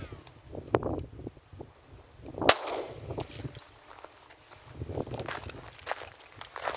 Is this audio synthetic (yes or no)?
no